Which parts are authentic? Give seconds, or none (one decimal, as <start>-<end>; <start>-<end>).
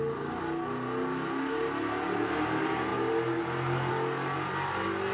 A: 0.0-5.1